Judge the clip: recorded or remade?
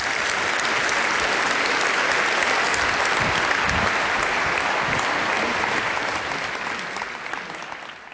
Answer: recorded